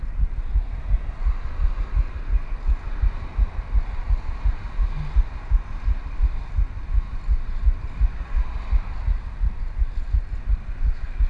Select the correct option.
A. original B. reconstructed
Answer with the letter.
A